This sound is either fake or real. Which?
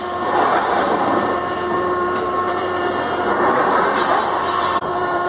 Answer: fake